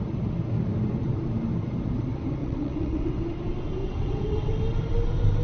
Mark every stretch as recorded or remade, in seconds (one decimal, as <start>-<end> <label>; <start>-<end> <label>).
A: 0.0-2.4 recorded; 2.4-3.2 remade; 3.2-3.8 recorded; 3.8-4.5 remade; 4.5-5.4 recorded

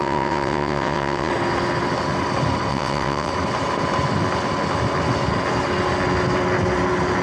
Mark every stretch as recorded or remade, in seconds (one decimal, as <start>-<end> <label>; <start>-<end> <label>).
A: 0.0-1.3 remade; 1.3-2.7 recorded; 2.7-3.3 remade; 3.3-7.2 recorded

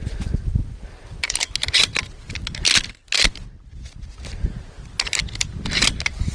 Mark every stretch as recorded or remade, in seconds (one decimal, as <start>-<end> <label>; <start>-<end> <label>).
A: 0.0-6.3 recorded

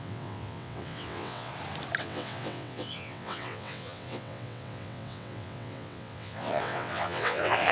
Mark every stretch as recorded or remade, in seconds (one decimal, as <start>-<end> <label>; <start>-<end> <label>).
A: 0.0-1.5 remade; 1.5-2.0 recorded; 2.0-7.7 remade

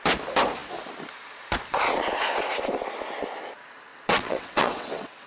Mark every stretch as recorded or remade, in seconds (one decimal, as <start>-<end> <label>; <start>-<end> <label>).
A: 0.0-3.9 recorded; 3.9-5.3 remade

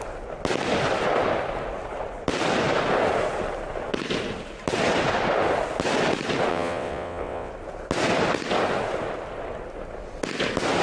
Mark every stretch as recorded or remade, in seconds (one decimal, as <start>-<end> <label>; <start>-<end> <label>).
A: 0.0-6.5 recorded; 6.5-7.5 remade; 7.5-10.8 recorded

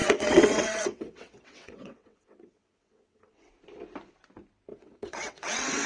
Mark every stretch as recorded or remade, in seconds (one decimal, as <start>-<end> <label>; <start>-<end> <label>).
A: 0.0-3.5 remade; 3.5-4.7 recorded; 4.7-5.9 remade